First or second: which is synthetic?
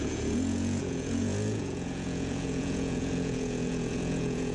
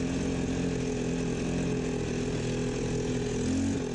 first